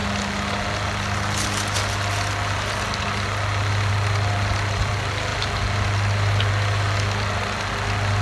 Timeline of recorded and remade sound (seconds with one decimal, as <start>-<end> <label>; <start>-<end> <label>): 0.0-8.2 recorded

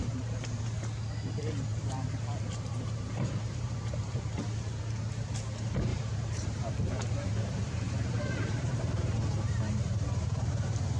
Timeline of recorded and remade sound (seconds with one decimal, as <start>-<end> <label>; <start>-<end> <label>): 0.0-0.7 remade; 0.7-1.7 recorded; 1.7-4.2 remade; 4.2-5.9 recorded; 5.9-10.5 remade; 10.5-11.0 recorded